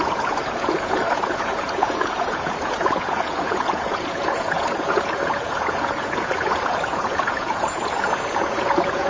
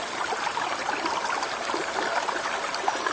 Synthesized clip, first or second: first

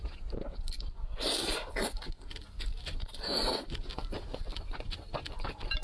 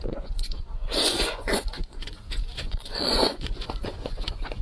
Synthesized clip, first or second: second